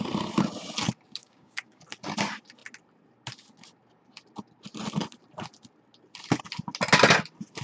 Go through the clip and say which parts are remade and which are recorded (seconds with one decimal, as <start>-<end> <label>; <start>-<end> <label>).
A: 0.0-1.2 recorded; 1.2-1.8 remade; 1.8-7.6 recorded